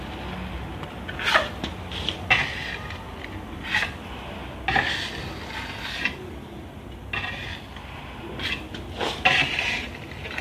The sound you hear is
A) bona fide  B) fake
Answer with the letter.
A